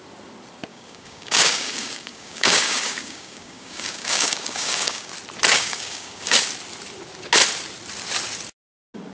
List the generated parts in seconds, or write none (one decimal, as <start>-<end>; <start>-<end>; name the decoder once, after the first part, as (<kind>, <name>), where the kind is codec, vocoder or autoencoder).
0.7-5.1 (codec, DAC); 5.5-6.4